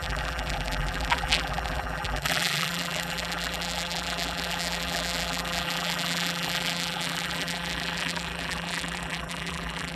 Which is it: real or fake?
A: fake